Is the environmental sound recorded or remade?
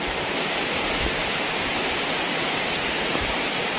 remade